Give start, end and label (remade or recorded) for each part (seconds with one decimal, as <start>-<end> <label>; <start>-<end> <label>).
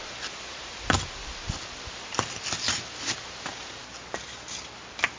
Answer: 0.0-5.2 recorded